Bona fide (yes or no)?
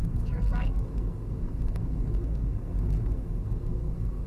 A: no